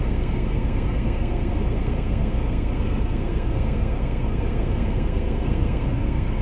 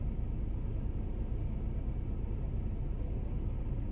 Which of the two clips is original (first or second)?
second